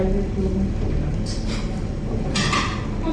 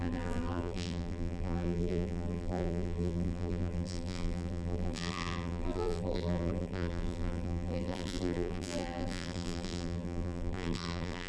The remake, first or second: second